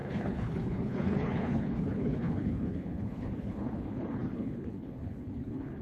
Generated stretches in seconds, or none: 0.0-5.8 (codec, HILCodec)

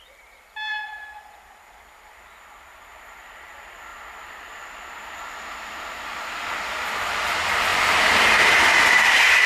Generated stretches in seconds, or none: 0.0-3.9 (vocoder, BigVGAN v2); 6.4-9.5